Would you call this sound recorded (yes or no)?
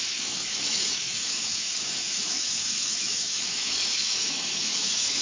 no